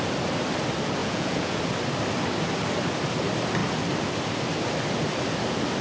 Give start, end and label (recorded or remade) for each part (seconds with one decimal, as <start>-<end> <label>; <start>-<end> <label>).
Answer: 0.0-1.0 recorded; 1.0-1.6 remade; 1.6-5.8 recorded